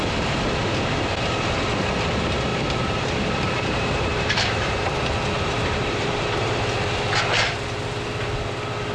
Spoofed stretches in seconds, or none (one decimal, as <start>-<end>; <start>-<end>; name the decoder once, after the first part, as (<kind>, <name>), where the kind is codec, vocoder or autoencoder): 2.5-6.5 (vocoder, BigVGAN v2)